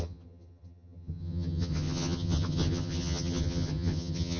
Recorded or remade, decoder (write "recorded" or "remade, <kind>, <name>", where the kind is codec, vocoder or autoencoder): remade, vocoder, HiFi-GAN